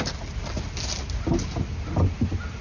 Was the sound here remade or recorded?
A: recorded